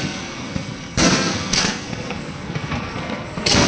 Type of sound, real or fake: fake